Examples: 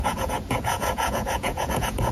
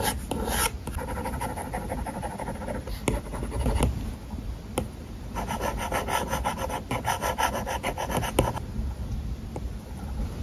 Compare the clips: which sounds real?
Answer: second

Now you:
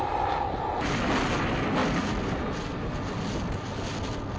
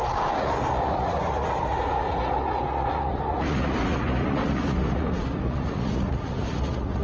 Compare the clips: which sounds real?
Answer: first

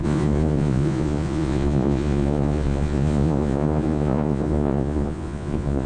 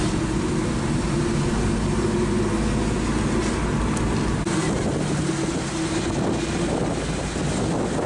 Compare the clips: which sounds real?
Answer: second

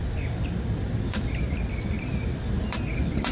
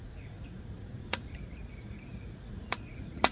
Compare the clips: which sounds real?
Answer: first